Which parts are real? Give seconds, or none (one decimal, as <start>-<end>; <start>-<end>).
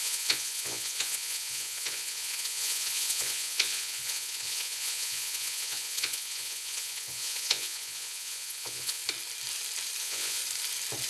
9.0-10.0; 10.4-11.1